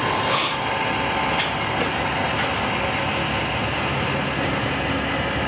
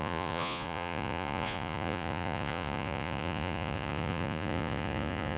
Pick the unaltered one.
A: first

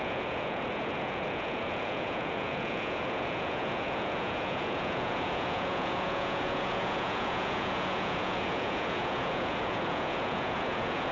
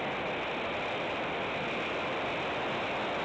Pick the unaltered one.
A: second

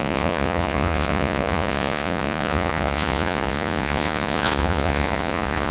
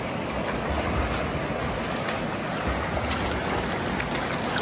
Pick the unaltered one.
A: second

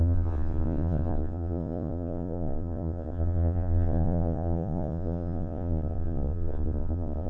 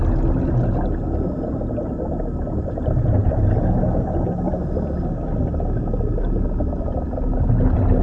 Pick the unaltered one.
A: second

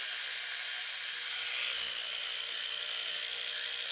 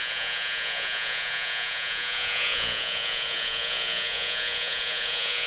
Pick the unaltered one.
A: first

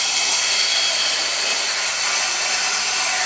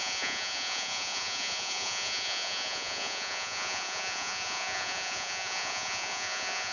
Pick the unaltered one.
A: first